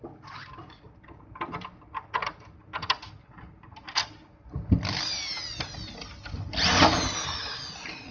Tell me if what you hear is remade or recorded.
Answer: recorded